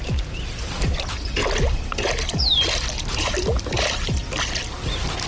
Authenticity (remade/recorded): recorded